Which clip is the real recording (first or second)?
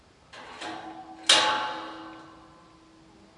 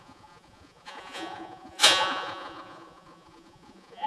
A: first